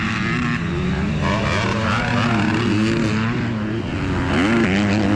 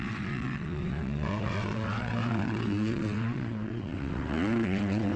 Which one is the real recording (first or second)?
first